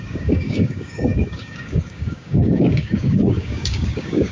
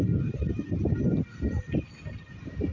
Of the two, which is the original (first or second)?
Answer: second